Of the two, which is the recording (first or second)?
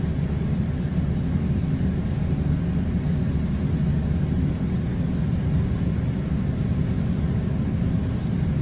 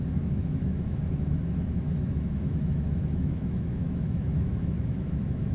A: first